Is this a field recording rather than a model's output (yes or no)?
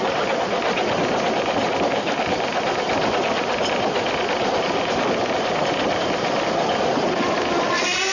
yes